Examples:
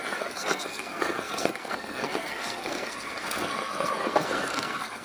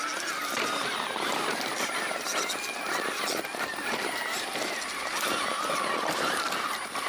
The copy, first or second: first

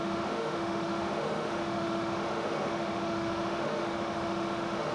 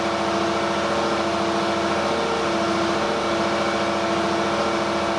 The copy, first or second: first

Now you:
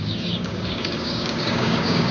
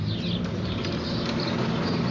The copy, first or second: first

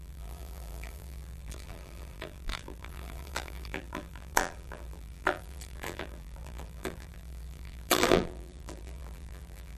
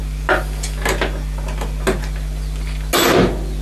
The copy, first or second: first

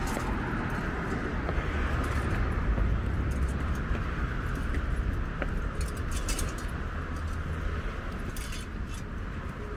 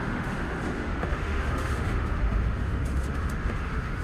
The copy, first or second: second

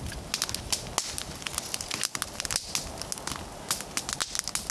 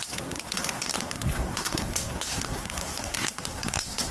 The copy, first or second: second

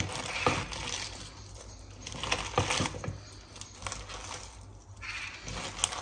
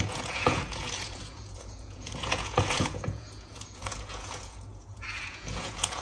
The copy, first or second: second